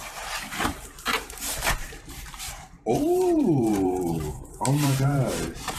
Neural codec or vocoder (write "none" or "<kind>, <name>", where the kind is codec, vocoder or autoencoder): vocoder, BigVGAN v2